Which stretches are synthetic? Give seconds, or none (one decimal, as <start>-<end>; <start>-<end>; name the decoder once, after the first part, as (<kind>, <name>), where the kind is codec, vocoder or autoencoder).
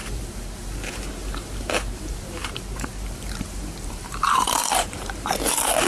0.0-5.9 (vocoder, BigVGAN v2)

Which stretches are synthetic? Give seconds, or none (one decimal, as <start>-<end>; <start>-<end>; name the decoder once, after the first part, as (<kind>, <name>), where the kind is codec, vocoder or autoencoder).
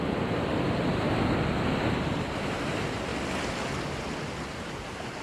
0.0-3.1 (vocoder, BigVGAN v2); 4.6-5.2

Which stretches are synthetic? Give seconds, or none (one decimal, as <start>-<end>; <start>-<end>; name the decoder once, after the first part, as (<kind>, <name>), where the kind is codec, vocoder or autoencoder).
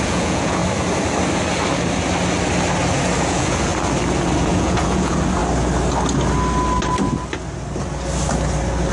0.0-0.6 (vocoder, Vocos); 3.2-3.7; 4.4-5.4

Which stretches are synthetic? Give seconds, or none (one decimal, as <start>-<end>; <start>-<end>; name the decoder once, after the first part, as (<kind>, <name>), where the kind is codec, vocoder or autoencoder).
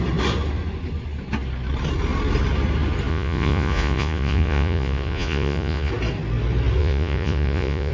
3.1-5.9 (vocoder, Vocos); 6.8-7.9